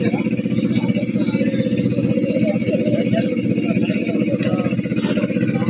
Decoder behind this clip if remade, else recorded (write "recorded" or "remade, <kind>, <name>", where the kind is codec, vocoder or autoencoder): recorded